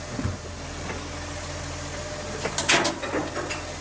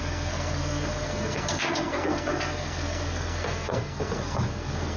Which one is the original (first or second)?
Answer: first